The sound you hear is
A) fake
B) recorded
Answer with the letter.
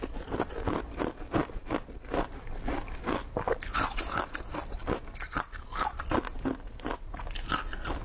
B